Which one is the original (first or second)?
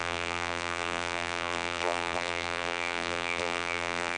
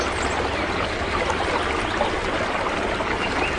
second